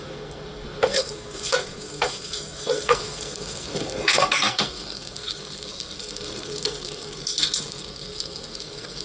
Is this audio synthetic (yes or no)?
yes